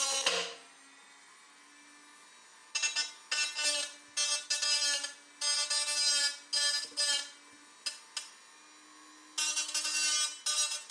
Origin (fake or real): real